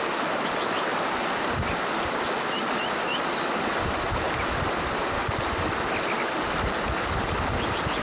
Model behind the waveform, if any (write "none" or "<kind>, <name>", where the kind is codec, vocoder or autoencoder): none